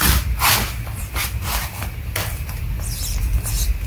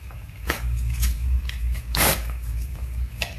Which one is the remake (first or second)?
second